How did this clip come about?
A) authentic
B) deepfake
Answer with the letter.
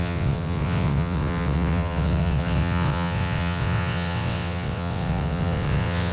B